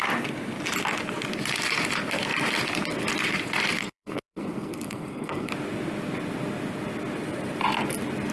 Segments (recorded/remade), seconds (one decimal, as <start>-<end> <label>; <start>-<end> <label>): 0.0-3.8 recorded; 3.8-5.5 remade; 5.5-8.3 recorded